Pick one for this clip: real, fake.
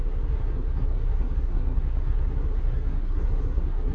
fake